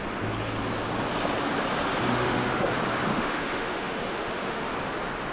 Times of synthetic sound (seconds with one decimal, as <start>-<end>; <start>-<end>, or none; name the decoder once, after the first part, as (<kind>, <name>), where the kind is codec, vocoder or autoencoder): 2.1-2.7 (autoencoder, DAC-VAE); 3.1-4.7